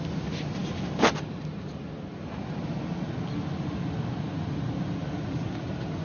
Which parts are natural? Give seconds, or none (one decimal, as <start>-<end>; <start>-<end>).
0.0-6.0